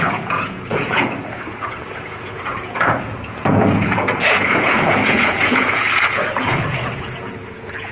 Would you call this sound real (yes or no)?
no